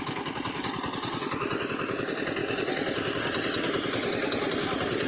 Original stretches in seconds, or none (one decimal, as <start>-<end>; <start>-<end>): 0.0-5.1